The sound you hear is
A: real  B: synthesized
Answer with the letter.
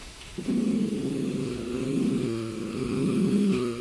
B